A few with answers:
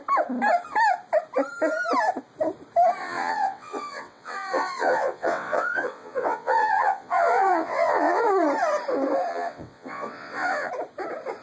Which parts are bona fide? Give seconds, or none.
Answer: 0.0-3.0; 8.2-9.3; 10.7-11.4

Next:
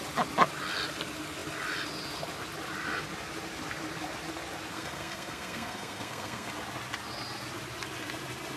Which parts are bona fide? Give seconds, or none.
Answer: 0.0-4.7; 6.5-8.6

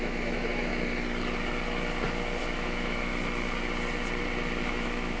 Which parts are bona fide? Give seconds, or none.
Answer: 0.7-2.4; 3.1-4.6

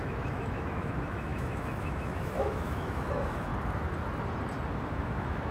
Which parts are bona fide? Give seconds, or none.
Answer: 3.5-4.8

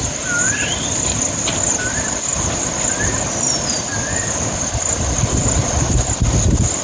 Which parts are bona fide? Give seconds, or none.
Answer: 0.0-6.8

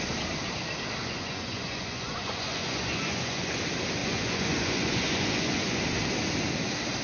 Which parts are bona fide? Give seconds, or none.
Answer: 0.0-1.0; 3.6-4.0; 5.8-7.0

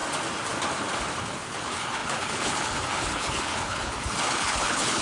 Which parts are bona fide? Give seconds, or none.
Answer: 0.0-1.2